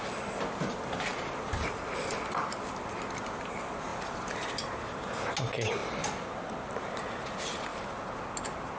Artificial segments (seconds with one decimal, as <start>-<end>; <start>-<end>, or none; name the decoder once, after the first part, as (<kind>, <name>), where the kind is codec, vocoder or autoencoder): 1.1-1.7 (vocoder, BigVGAN v2); 3.9-4.6; 5.8-6.9